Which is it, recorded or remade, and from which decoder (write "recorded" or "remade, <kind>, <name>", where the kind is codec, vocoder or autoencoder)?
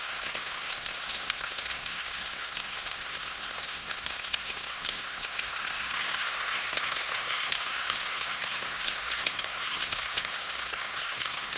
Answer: remade, codec, SNAC